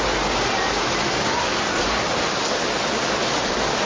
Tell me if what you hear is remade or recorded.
recorded